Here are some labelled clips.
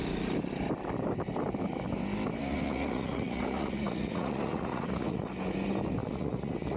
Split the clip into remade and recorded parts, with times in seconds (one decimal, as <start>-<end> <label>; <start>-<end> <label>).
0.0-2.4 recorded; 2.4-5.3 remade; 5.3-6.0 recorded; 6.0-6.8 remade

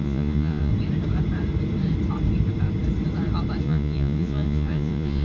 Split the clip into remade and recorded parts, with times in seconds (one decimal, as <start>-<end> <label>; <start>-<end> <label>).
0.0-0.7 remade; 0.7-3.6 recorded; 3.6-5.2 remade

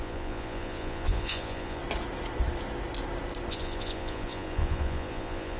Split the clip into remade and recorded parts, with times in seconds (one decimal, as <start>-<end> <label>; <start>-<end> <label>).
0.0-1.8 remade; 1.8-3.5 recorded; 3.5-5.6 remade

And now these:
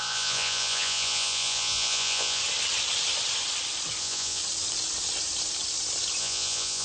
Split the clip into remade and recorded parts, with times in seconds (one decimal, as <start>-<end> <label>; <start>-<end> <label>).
0.0-2.4 remade; 2.4-4.0 recorded; 4.0-4.4 remade; 4.4-6.2 recorded; 6.2-6.8 remade